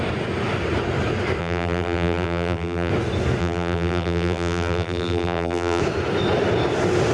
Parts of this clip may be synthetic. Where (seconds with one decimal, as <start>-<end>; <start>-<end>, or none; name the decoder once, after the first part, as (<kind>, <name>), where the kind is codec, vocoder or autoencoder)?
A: 1.4-2.9 (vocoder, BigVGAN v2); 3.4-5.8